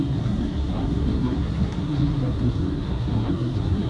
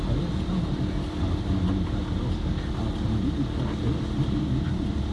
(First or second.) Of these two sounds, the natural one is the second